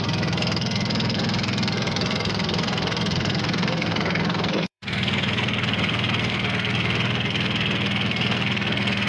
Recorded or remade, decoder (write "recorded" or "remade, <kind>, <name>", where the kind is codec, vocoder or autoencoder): remade, codec, SNAC